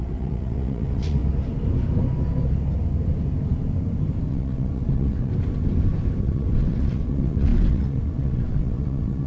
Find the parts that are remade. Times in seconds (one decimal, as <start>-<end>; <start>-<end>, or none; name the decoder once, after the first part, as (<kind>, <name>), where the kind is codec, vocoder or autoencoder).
0.0-1.2 (vocoder, WaveNeXt); 4.3-5.3; 6.2-9.3